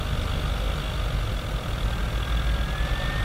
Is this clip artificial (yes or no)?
no